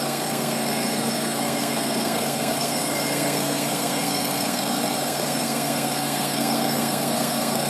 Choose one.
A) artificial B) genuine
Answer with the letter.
A